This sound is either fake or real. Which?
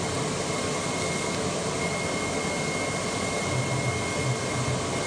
real